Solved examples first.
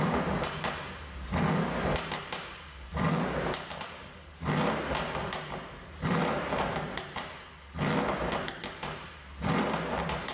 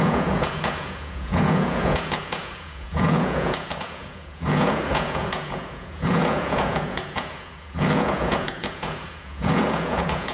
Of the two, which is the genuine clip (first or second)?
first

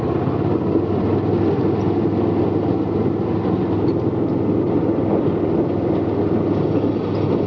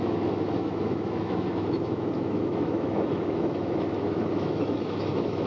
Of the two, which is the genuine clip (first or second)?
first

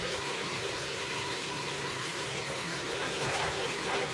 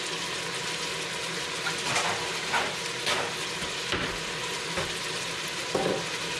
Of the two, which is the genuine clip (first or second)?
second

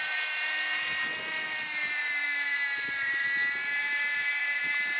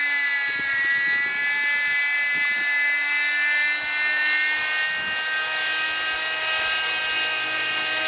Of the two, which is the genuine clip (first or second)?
second